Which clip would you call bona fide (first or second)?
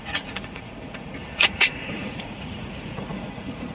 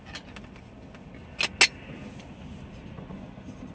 second